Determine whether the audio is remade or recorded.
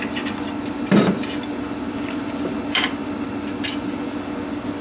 recorded